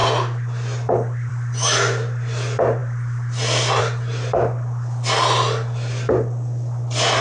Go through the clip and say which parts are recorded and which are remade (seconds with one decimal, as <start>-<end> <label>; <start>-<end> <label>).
0.0-7.2 recorded

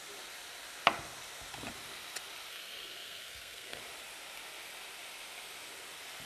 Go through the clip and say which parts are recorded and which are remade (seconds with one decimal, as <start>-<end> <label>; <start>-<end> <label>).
0.0-2.5 recorded; 2.5-3.8 remade; 3.8-6.3 recorded

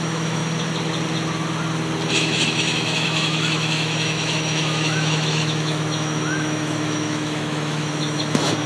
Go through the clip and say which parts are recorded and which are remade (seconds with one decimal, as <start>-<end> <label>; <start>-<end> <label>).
0.0-0.4 remade; 0.4-2.1 recorded; 2.1-8.7 remade

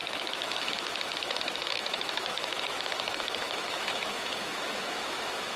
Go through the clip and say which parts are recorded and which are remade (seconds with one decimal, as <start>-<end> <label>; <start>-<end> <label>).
0.0-5.6 remade

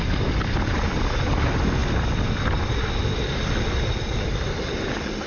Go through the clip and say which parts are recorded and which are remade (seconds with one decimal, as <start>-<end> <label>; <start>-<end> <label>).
0.0-5.3 recorded

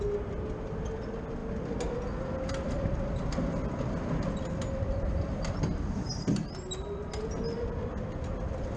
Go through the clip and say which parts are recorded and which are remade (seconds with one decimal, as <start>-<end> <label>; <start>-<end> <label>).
0.0-8.8 recorded